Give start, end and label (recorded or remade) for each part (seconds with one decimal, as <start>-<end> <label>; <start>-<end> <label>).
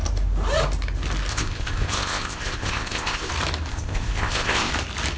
0.0-1.3 recorded; 1.3-3.3 remade; 3.3-3.7 recorded; 3.7-4.7 remade; 4.7-5.2 recorded